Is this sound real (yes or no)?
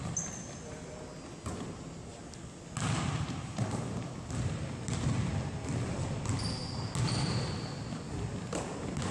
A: yes